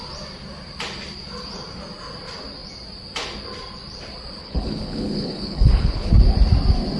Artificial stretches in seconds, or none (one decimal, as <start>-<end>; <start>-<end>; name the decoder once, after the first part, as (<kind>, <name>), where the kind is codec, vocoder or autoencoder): 4.4-6.1 (codec, HILCodec)